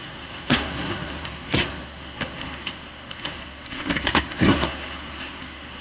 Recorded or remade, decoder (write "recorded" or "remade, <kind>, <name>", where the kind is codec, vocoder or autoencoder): remade, codec, SNAC